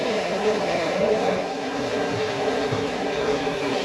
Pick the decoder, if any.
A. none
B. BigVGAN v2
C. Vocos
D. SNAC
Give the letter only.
D